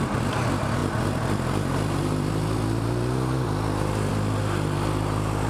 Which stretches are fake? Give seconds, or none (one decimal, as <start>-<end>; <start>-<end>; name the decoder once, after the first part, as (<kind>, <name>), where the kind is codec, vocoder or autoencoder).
none